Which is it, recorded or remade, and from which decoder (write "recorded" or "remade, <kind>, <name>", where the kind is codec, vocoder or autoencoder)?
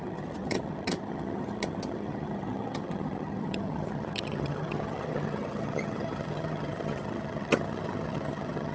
remade, vocoder, HiFi-GAN